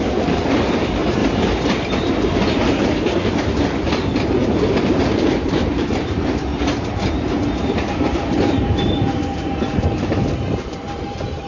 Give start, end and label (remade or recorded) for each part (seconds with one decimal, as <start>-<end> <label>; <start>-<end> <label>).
0.0-1.2 remade; 1.2-4.0 recorded; 4.0-6.5 remade; 6.5-7.1 recorded; 7.1-11.5 remade